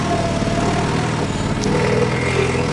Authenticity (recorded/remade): recorded